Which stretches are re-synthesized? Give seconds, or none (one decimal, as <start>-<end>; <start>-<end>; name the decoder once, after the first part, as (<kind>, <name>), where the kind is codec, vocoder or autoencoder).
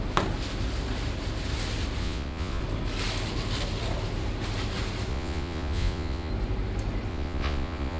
2.0-2.6 (vocoder, Vocos); 5.1-6.3; 7.1-8.0